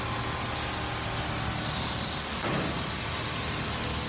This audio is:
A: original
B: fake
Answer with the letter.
A